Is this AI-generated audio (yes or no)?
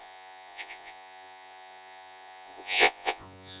yes